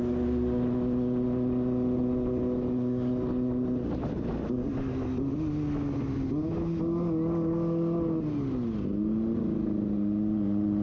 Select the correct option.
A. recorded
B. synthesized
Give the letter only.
A